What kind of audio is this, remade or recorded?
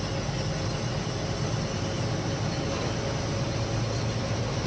recorded